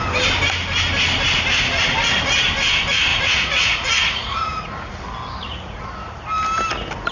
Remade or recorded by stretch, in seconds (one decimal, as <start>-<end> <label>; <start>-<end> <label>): 0.0-3.1 recorded; 3.1-4.9 remade; 4.9-5.4 recorded; 5.4-6.2 remade; 6.2-7.1 recorded